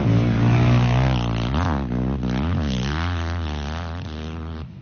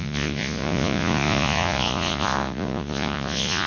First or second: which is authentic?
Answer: first